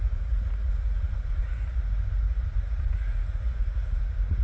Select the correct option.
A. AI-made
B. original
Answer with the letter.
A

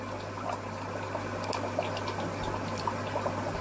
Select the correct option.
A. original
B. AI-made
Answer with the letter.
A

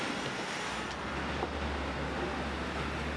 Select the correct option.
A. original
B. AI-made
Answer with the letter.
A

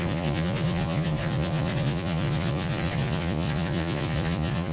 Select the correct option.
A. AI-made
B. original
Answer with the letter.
A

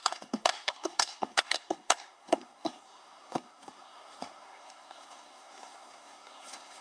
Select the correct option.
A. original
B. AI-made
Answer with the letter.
B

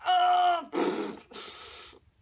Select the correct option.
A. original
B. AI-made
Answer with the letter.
A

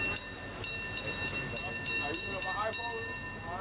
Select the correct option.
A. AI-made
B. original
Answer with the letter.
B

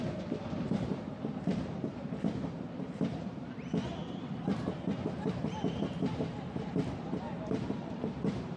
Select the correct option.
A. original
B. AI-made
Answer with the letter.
B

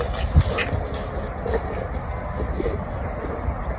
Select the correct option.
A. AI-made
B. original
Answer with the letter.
B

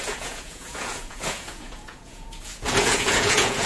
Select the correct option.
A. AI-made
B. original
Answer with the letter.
A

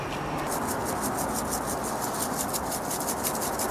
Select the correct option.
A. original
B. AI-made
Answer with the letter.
A